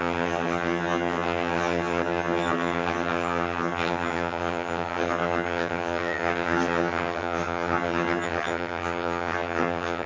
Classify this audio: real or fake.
fake